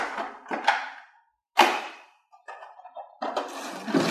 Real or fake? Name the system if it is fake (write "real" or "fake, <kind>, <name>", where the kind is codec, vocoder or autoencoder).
real